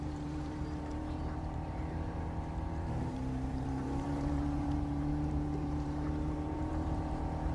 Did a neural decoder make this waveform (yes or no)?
yes